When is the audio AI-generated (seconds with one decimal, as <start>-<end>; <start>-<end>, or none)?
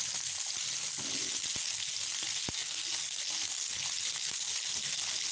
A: none